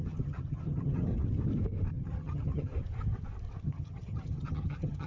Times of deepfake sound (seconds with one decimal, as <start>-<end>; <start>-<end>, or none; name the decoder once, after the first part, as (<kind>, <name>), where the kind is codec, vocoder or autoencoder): 0.0-1.1 (vocoder, HiFi-GAN); 1.9-2.7; 3.7-5.1